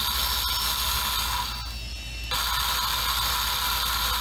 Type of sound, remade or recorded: recorded